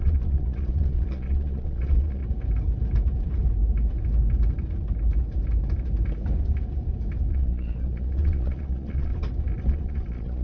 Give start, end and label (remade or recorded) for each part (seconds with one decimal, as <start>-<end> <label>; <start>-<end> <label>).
0.0-2.2 remade; 2.2-7.3 recorded; 7.3-9.1 remade; 9.1-9.7 recorded; 9.7-10.4 remade